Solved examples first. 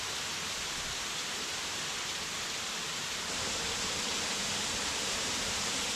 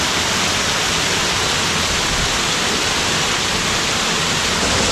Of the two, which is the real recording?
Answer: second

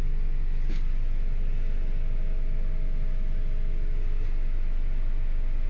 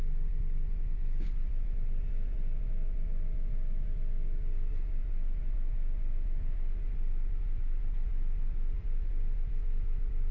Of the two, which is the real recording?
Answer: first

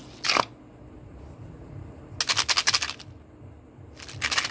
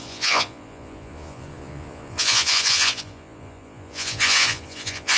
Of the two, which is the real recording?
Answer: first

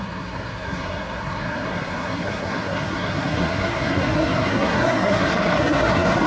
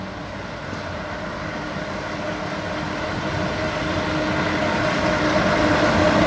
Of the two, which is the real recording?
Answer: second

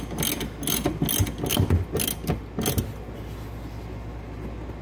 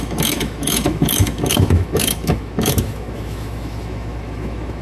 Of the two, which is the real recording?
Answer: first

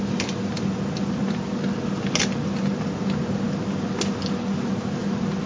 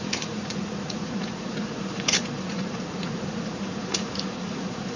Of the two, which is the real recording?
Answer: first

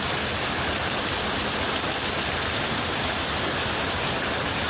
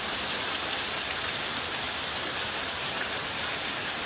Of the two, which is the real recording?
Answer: first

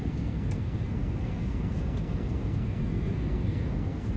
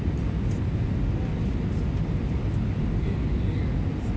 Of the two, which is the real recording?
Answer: second